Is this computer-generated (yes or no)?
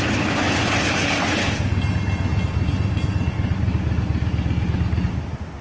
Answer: no